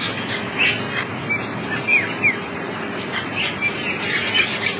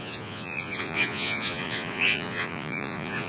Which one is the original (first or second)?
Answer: first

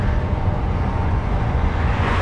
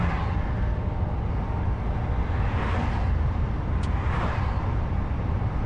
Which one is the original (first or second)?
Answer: second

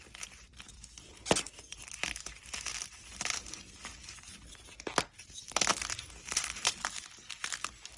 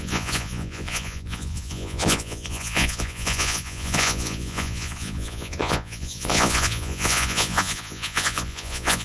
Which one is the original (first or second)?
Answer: first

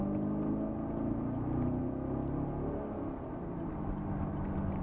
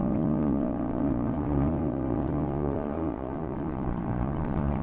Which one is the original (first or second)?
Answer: first